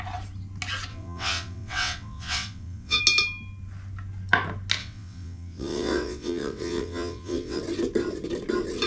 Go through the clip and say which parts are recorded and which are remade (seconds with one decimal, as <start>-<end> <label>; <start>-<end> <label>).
0.0-0.9 recorded; 0.9-3.0 remade; 3.0-4.8 recorded; 4.8-7.6 remade; 7.6-8.9 recorded